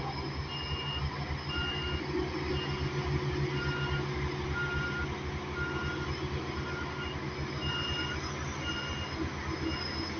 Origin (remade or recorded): recorded